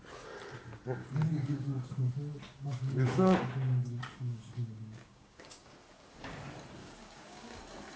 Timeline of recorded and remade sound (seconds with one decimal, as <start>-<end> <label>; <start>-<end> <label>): 0.0-1.0 recorded; 1.0-2.1 remade; 2.1-2.5 recorded; 2.5-5.7 remade; 5.7-6.8 recorded; 6.8-7.6 remade; 7.6-8.0 recorded